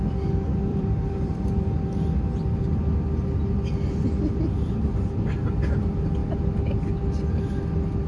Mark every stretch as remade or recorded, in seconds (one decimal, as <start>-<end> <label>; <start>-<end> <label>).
0.0-0.7 recorded; 0.7-1.8 remade; 1.8-8.1 recorded

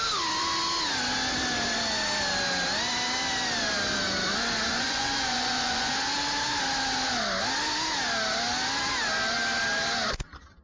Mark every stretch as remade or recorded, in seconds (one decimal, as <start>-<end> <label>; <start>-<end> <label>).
0.0-4.7 recorded; 4.7-5.9 remade; 5.9-10.6 recorded

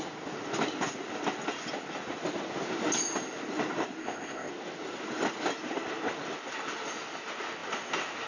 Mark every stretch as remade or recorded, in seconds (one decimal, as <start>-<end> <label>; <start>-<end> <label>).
0.0-4.0 recorded; 4.0-4.5 remade; 4.5-8.3 recorded

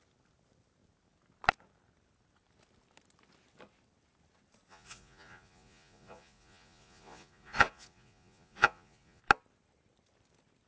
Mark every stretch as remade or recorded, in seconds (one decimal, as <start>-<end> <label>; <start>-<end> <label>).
0.0-4.7 recorded; 4.7-9.2 remade; 9.2-10.7 recorded

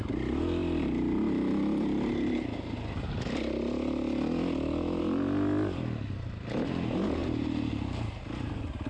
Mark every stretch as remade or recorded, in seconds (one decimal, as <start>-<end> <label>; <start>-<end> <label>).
0.0-8.9 recorded